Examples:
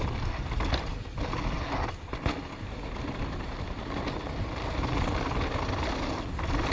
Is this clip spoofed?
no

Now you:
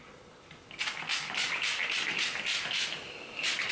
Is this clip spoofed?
no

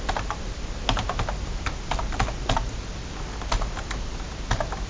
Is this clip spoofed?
no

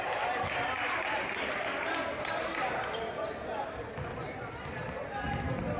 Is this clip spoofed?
no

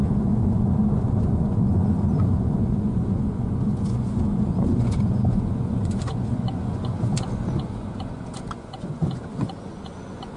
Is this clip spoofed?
yes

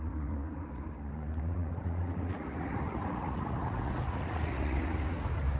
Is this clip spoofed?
yes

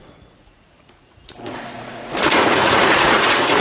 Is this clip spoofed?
yes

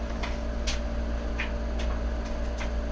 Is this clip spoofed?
no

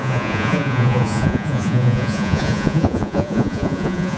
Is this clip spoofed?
yes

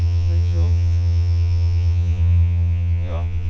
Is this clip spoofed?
yes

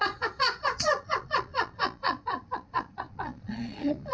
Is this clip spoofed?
yes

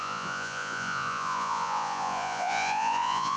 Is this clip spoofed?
yes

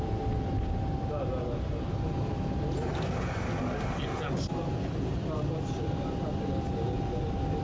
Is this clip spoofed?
no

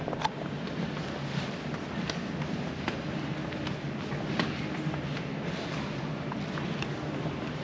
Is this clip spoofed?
no